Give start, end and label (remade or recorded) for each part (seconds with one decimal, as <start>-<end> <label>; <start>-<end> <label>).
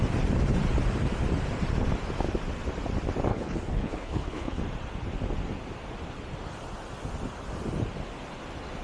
0.0-3.3 recorded; 3.3-4.6 remade; 4.6-8.8 recorded